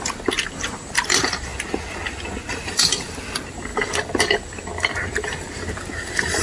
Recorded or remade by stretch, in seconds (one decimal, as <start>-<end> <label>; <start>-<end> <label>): 0.0-1.5 remade; 1.5-2.5 recorded; 2.5-6.4 remade